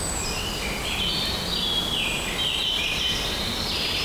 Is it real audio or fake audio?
real